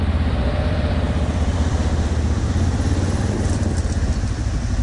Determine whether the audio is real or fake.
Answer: fake